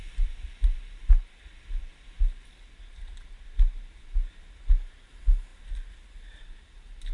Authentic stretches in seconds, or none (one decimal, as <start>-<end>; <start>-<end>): 0.0-7.1